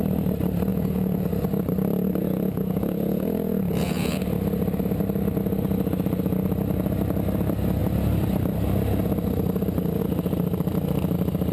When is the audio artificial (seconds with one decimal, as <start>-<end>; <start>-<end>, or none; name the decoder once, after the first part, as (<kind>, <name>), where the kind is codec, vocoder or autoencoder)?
0.7-1.3 (vocoder, Vocos); 2.2-4.2